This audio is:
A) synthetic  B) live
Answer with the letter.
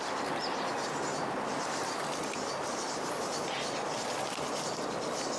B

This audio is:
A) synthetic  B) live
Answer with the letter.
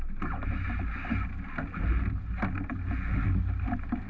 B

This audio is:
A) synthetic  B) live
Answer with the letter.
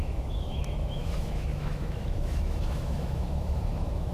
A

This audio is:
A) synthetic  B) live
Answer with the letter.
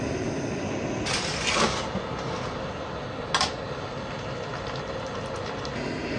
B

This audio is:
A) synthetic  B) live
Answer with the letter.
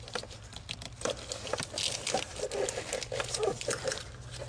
B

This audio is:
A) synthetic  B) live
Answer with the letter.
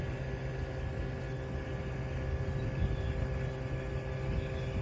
B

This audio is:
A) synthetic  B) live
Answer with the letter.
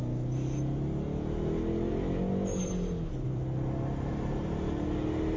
B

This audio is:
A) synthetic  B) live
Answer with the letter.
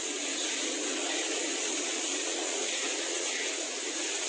A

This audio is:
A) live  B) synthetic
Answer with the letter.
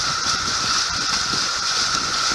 B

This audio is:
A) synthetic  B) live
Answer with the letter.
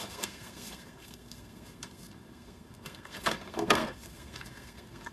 A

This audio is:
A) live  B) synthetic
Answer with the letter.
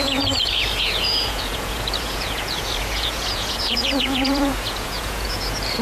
B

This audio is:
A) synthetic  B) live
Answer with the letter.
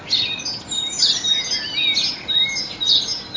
B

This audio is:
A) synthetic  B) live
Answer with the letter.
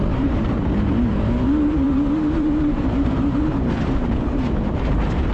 A